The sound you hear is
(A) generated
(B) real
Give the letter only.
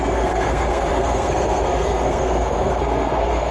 A